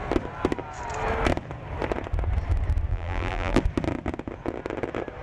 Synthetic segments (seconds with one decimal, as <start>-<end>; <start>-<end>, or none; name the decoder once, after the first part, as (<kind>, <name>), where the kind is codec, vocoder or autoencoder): 2.9-3.6 (vocoder, BigVGAN v2)